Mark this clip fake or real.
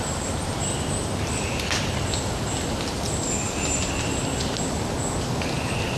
real